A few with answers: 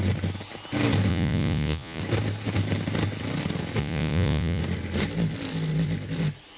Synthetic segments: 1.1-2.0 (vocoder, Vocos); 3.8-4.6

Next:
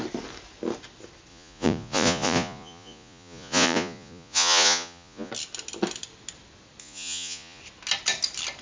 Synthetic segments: 1.3-5.3 (vocoder, Vocos); 6.8-7.6

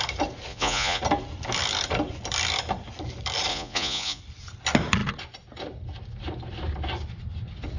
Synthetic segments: 0.5-1.0 (vocoder, Vocos); 3.5-4.2

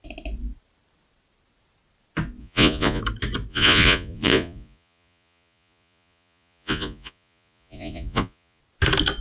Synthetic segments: 2.4-3.0 (vocoder, Vocos); 3.5-8.6

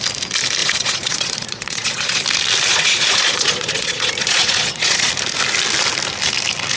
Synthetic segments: 0.6-2.2 (vocoder, Vocos); 2.7-5.1

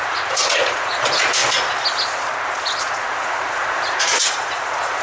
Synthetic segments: 0.0-1.4 (vocoder, Vocos); 2.8-5.0